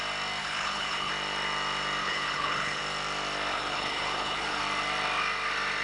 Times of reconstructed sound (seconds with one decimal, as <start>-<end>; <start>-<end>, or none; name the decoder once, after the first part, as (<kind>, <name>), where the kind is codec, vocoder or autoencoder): 0.4-1.1 (codec, HILCodec); 2.0-2.8; 3.5-4.6